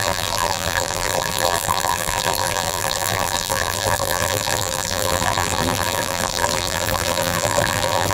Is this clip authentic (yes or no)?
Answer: no